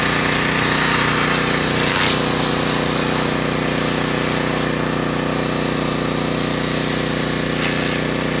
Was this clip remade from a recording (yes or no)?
no